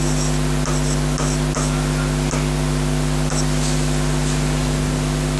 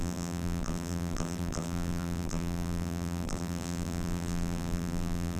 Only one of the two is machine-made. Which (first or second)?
second